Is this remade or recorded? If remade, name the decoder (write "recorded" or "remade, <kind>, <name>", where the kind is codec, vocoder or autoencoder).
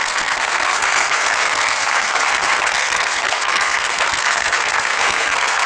remade, codec, SNAC